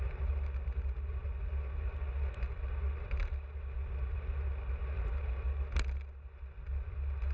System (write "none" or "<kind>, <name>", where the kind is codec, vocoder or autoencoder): none